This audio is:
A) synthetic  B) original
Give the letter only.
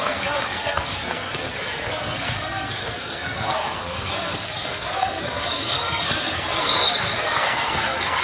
A